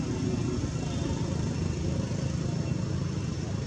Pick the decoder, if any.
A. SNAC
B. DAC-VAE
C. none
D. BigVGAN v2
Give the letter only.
C